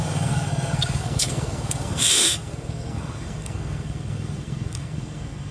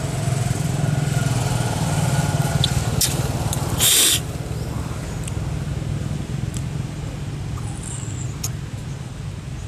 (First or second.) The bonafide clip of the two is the second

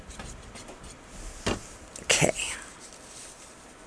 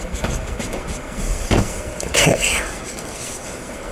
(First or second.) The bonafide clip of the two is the first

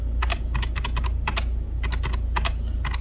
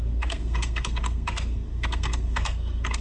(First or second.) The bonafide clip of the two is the first